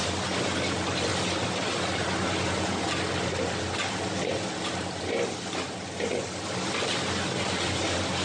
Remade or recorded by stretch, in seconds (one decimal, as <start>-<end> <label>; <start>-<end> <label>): 0.0-8.2 recorded